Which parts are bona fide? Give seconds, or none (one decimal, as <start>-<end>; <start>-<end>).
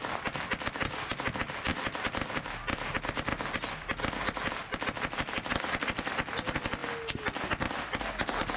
0.0-8.6